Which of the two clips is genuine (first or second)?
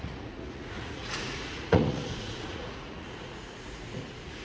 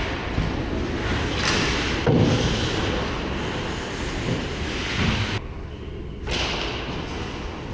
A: second